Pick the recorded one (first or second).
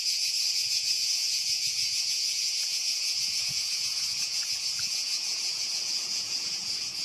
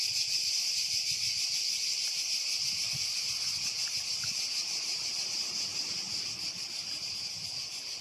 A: second